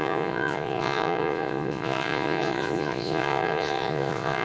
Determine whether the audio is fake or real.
fake